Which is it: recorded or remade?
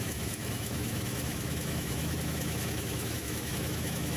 remade